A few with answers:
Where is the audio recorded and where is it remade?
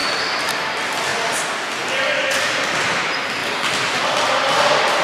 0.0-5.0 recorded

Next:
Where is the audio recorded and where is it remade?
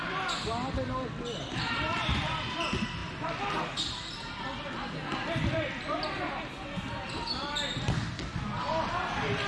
0.0-3.0 recorded; 3.0-4.3 remade; 4.3-5.1 recorded; 5.1-7.5 remade; 7.5-9.5 recorded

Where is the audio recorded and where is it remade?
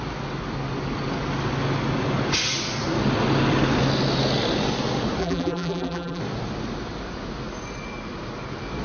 0.0-5.2 recorded; 5.2-6.2 remade; 6.2-8.8 recorded